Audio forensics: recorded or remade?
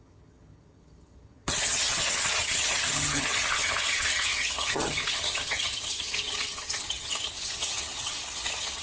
remade